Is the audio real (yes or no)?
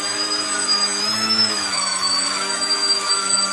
no